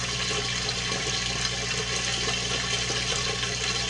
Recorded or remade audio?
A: recorded